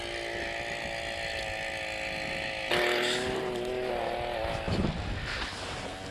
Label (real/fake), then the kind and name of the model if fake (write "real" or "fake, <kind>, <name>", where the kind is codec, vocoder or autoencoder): real